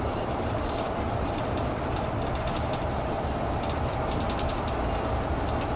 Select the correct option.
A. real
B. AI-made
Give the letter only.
B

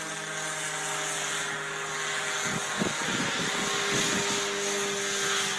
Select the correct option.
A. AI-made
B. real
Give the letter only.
B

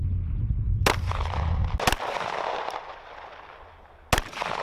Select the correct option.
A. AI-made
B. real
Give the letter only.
B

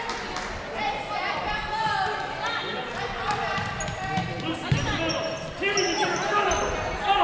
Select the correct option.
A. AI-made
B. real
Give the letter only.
B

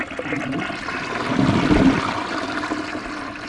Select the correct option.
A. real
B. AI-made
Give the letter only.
A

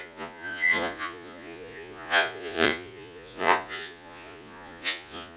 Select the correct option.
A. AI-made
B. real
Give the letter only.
A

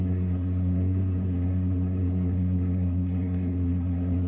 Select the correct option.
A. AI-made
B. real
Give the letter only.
A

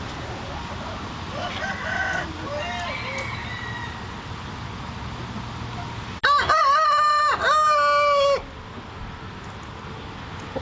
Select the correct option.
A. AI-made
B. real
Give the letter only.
B